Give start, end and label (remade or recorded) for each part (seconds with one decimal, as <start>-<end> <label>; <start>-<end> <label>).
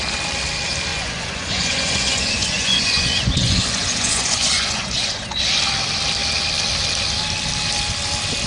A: 0.0-0.9 recorded; 0.9-5.4 remade; 5.4-8.5 recorded